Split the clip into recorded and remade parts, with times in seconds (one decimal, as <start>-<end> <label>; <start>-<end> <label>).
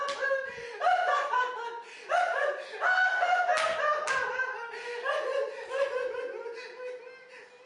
0.0-7.7 recorded